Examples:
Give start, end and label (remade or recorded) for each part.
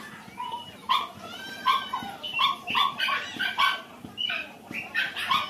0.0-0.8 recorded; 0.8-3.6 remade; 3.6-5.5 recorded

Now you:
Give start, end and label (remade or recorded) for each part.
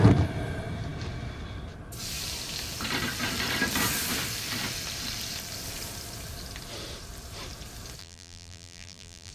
0.0-8.0 recorded; 8.0-9.3 remade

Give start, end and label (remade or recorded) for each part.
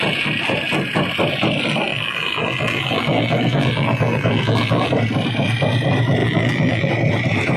0.0-1.9 recorded; 1.9-4.9 remade; 4.9-6.2 recorded; 6.2-6.9 remade; 6.9-7.6 recorded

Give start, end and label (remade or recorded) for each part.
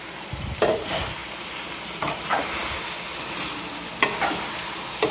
0.0-2.6 remade; 2.6-4.5 recorded; 4.5-5.1 remade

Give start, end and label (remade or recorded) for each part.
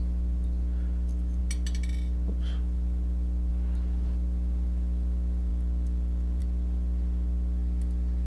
0.0-8.3 recorded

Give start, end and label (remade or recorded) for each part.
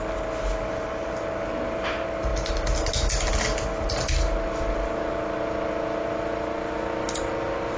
0.0-7.8 recorded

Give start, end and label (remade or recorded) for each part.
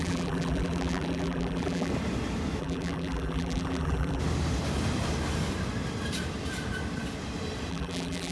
0.0-1.9 remade; 1.9-2.6 recorded; 2.6-4.2 remade; 4.2-7.7 recorded; 7.7-8.3 remade